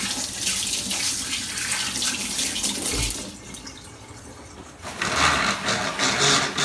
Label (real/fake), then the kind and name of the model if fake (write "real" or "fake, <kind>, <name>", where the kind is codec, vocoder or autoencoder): real